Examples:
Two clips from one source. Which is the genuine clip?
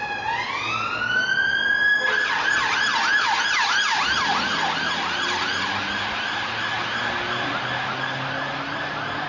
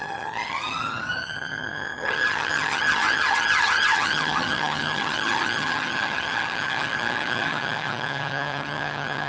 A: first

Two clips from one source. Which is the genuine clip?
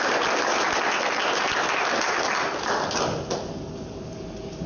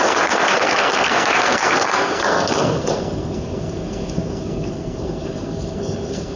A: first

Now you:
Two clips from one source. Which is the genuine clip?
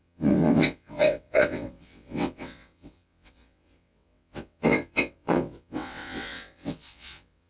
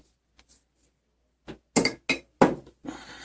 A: second